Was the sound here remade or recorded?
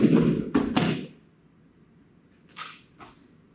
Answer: recorded